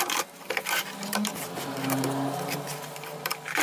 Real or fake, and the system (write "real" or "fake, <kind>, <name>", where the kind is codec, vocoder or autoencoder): real